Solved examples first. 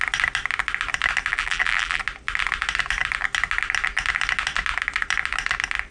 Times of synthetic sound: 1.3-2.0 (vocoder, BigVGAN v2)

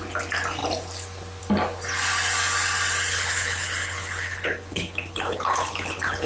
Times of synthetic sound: 3.1-6.3 (codec, HILCodec)

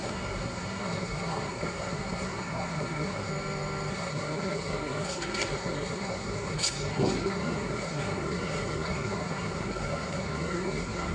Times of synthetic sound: 0.0-3.3 (codec, SNAC); 3.9-11.1

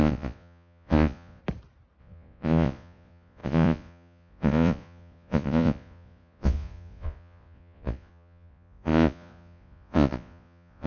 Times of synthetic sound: 0.0-1.4 (vocoder, Vocos); 2.0-10.9

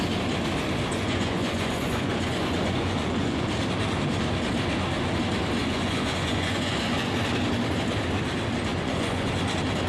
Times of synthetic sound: 0.9-3.5 (vocoder, Vocos); 5.6-7.1; 8.7-9.3

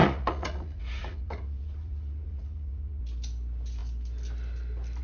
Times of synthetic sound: 0.0-3.0 (vocoder, Vocos)

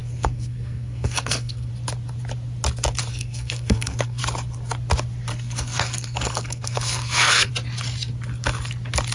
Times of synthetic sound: 0.0-1.7 (codec, SNAC); 3.1-4.2; 5.3-7.5

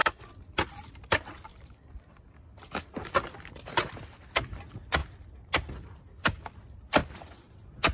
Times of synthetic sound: 0.0-4.0 (vocoder, BigVGAN v2); 7.0-7.5